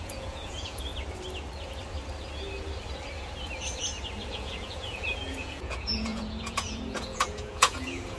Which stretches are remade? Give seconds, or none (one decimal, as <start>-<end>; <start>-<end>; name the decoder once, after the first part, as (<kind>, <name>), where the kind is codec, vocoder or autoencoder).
0.0-0.9 (vocoder, Vocos); 4.3-8.2